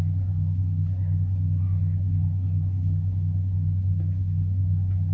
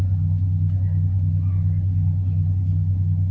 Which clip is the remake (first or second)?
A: first